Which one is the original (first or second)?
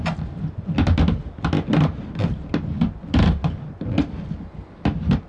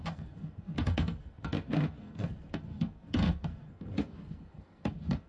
first